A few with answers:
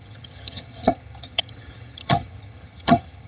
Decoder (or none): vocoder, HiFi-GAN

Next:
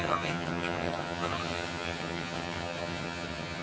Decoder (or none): vocoder, HiFi-GAN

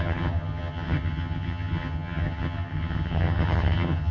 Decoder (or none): vocoder, HiFi-GAN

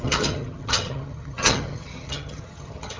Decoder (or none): vocoder, HiFi-GAN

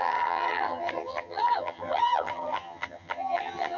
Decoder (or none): vocoder, HiFi-GAN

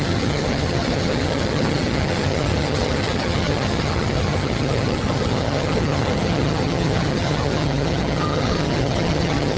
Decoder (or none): vocoder, HiFi-GAN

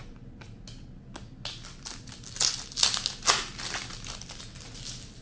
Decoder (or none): none